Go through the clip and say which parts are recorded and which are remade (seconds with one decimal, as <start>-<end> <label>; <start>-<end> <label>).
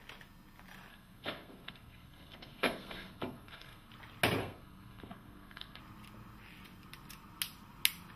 0.0-0.9 recorded; 0.9-3.9 remade; 3.9-4.4 recorded; 4.4-5.8 remade; 5.8-8.2 recorded